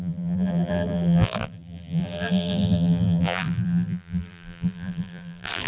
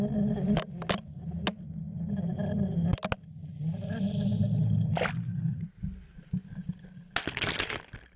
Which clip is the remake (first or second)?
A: first